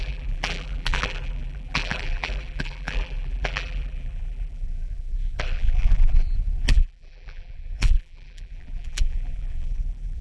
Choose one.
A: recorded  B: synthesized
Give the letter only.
B